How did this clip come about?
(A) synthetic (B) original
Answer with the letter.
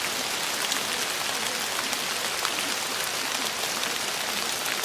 B